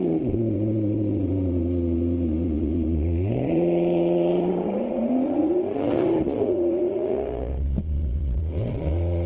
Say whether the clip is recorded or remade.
remade